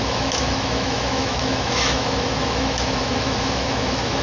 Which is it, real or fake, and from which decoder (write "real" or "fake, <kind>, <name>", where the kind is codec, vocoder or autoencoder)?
fake, autoencoder, DAC-VAE